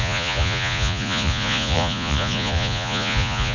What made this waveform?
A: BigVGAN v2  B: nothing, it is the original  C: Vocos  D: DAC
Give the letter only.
C